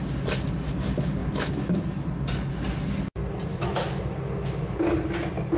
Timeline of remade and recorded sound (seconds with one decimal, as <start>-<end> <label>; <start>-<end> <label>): 0.0-1.2 recorded; 1.2-1.9 remade; 1.9-3.5 recorded; 3.5-4.0 remade; 4.0-5.6 recorded